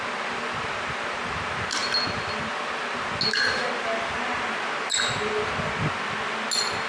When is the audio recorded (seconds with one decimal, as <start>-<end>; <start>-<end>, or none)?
0.0-6.9